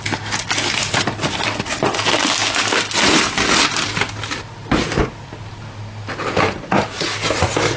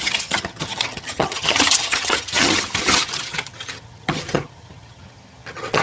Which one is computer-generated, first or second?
second